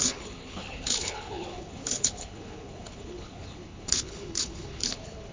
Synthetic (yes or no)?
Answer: yes